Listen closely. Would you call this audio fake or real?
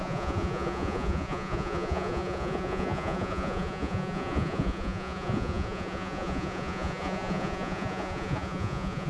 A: fake